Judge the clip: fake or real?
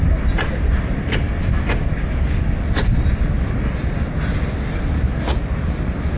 real